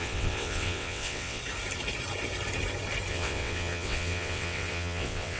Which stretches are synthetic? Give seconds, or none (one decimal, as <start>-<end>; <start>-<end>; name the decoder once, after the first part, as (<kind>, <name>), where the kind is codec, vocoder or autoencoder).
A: 0.0-1.4 (vocoder, WaveNeXt); 3.1-5.4

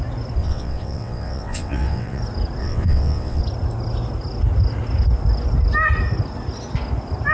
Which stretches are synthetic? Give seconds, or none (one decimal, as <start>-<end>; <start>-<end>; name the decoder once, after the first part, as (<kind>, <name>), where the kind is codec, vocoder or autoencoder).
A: 0.4-2.2 (vocoder, WaveNeXt); 2.6-3.4

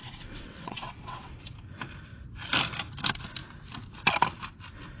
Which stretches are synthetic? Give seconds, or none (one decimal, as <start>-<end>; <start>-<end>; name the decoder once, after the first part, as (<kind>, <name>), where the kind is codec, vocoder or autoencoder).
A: 0.0-1.3 (vocoder, WaveNeXt)

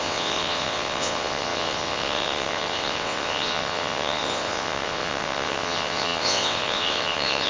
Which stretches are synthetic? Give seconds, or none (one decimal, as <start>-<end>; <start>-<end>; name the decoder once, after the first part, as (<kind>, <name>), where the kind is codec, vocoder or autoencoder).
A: 0.0-7.5 (vocoder, WaveNeXt)